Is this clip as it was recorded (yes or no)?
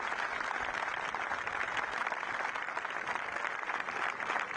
yes